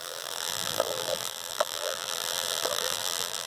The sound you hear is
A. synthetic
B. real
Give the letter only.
A